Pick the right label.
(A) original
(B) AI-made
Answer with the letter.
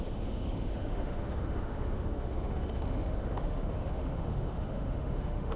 B